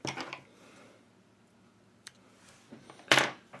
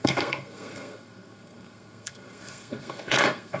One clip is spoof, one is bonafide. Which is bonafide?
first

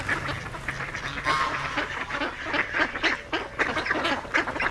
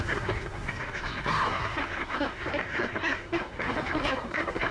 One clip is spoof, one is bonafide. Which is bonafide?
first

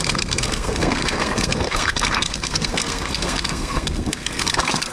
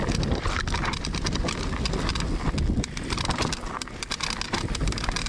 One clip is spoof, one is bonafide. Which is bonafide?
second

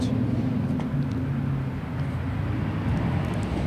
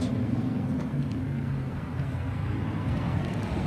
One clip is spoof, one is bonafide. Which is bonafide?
first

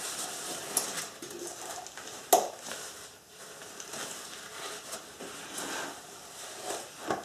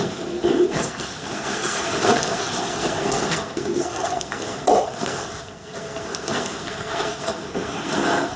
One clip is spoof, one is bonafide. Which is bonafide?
first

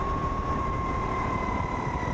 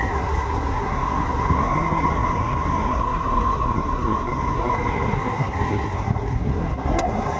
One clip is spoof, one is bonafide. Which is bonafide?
first